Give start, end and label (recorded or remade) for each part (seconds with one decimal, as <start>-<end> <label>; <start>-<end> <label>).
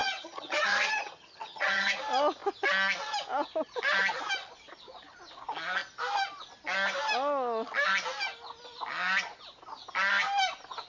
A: 0.0-2.0 remade; 2.0-10.9 recorded